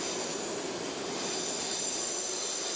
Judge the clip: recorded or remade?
recorded